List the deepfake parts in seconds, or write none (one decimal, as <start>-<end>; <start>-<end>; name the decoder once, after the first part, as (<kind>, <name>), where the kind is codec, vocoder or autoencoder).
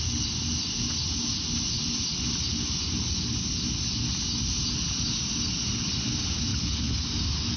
6.5-7.1 (codec, HILCodec)